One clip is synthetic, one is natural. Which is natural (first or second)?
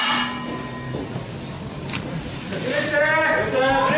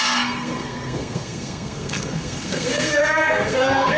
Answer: first